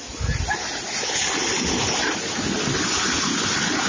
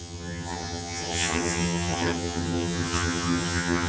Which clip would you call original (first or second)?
first